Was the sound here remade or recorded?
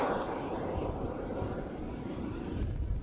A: remade